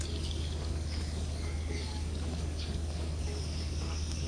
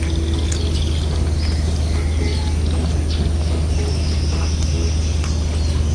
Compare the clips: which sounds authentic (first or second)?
second